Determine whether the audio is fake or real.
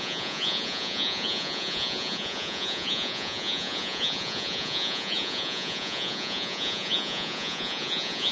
fake